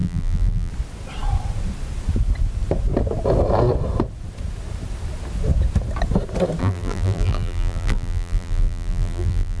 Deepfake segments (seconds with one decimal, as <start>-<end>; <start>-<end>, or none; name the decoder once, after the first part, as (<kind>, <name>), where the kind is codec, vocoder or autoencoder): 0.0-0.7 (vocoder, BigVGAN v2); 6.6-9.6